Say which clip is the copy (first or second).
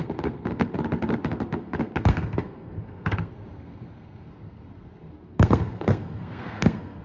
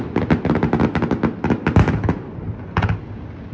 first